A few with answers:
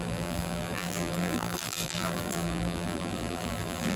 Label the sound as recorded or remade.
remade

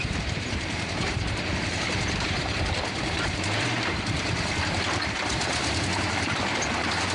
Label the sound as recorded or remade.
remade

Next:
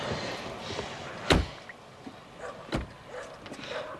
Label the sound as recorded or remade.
recorded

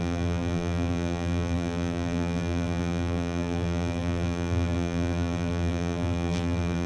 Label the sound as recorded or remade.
remade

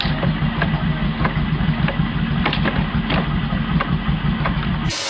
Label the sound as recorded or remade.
recorded